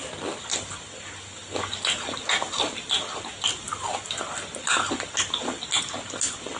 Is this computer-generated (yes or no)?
no